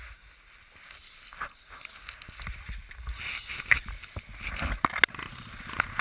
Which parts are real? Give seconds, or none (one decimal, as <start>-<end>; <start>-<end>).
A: 0.0-6.0